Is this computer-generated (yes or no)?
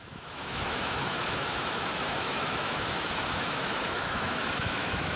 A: yes